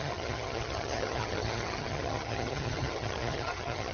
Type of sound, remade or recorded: remade